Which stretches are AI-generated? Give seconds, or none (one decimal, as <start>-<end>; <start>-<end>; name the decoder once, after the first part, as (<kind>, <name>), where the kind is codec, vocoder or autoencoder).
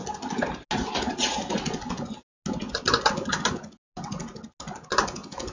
none